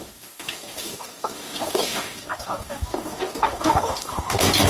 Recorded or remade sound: remade